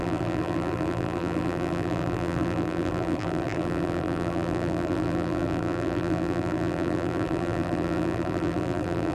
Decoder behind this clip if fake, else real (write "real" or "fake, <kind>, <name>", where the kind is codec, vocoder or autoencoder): fake, vocoder, BigVGAN v2